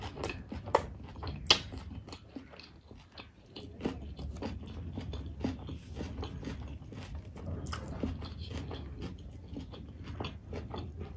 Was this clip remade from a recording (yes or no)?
no